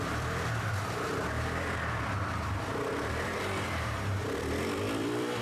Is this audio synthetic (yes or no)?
yes